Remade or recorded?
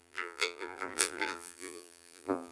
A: remade